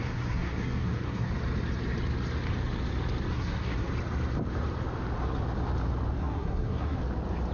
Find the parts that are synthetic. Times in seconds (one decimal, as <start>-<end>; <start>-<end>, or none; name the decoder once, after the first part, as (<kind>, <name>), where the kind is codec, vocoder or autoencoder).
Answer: 0.0-1.3 (codec, SNAC); 3.3-3.9; 6.2-7.0